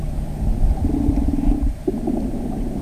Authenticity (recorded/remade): recorded